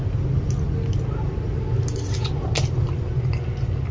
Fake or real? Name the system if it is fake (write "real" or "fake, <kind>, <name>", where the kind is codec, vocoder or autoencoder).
real